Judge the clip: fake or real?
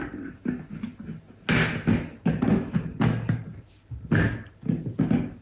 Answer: real